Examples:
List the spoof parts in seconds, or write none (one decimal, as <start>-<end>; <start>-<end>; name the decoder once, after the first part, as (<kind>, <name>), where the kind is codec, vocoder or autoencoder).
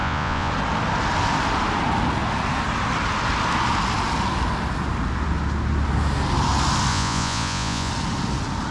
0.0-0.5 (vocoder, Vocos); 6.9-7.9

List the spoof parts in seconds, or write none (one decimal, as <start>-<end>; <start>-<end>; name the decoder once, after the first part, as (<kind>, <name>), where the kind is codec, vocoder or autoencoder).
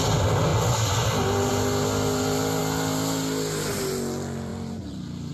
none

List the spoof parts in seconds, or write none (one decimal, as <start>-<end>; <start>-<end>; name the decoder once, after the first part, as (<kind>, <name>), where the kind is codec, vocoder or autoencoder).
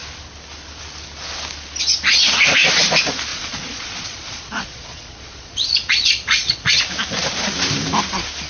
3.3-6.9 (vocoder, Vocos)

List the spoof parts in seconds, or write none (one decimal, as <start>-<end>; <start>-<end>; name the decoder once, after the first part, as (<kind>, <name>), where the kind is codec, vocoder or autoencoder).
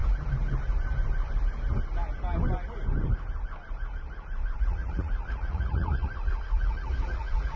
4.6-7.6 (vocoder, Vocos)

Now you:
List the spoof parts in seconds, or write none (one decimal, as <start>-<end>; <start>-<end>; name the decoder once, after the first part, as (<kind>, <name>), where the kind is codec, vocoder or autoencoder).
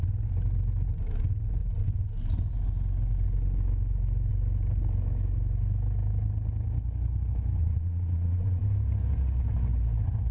7.6-8.6 (vocoder, Vocos)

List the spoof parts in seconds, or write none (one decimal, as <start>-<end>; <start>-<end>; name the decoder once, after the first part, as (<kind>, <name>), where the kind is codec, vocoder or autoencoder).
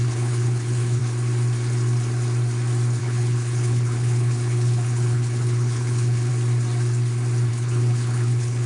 0.0-1.0 (codec, HILCodec); 3.0-6.3; 7.5-8.7